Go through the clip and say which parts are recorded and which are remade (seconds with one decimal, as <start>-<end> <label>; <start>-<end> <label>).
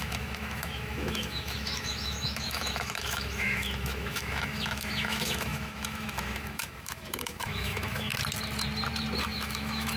0.0-8.1 remade; 8.1-9.2 recorded; 9.2-10.0 remade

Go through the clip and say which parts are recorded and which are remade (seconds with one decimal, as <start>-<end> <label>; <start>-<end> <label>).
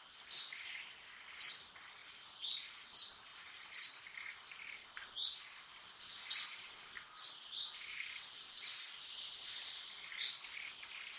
0.0-11.2 recorded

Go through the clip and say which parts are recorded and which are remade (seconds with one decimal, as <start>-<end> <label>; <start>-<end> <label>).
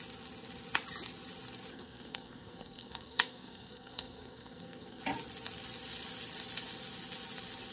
0.0-1.7 recorded; 1.7-5.0 remade; 5.0-7.7 recorded